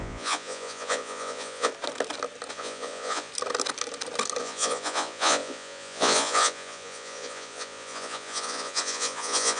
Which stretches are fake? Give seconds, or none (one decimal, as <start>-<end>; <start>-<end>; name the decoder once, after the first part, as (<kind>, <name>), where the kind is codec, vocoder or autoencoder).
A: 0.0-1.7 (vocoder, Vocos); 2.5-3.3; 4.4-9.6